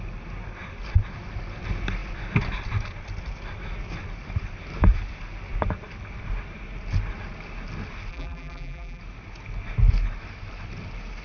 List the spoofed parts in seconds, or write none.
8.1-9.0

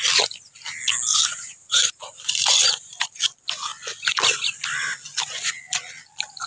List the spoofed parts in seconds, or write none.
1.1-3.2

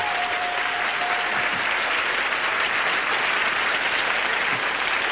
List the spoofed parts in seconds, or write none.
none

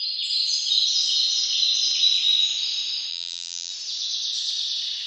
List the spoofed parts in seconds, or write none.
3.1-3.7

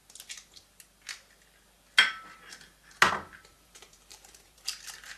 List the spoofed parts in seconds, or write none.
3.5-4.8

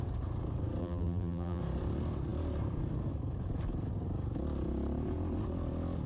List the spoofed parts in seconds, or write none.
0.8-1.6

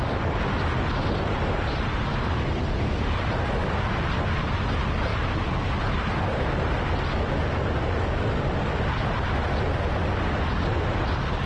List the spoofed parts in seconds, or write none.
none